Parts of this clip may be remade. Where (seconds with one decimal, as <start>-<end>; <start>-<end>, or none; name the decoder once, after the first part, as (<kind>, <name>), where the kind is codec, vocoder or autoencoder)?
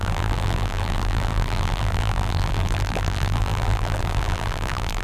0.0-5.0 (vocoder, BigVGAN v2)